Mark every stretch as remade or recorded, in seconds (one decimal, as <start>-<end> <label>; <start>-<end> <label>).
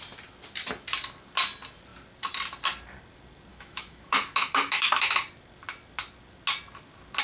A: 0.0-3.5 recorded; 3.5-5.0 remade; 5.0-7.2 recorded